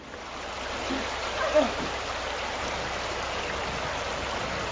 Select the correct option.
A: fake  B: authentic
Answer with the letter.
B